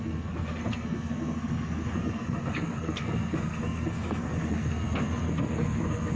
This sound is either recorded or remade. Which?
remade